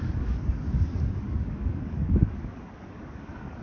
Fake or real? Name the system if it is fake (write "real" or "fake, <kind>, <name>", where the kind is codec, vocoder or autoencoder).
fake, codec, DAC